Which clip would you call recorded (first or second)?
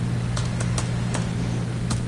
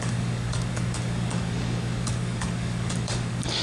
first